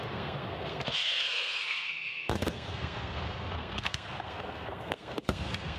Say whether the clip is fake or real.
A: fake